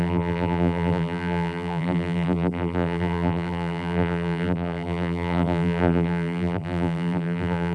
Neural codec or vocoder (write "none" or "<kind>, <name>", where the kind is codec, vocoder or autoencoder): vocoder, BigVGAN v2